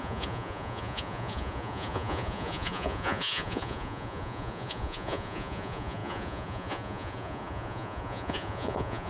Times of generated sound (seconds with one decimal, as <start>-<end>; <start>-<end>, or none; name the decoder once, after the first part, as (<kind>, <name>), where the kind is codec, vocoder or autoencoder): 0.0-9.1 (vocoder, Vocos)